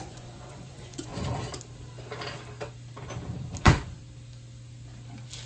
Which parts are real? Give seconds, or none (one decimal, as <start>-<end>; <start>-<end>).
1.1-3.6; 4.0-5.5